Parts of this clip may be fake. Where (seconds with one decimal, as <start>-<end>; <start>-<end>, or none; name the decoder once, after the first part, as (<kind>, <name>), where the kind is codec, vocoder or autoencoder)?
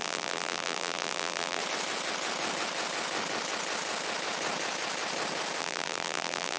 0.0-1.6 (vocoder, BigVGAN v2); 5.6-6.6